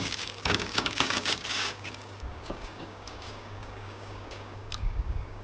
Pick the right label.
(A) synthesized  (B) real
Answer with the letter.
A